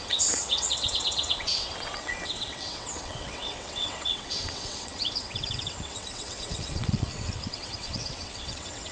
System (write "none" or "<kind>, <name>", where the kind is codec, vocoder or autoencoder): vocoder, WaveNeXt